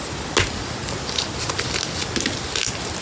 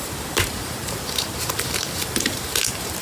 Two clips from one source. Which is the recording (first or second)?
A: first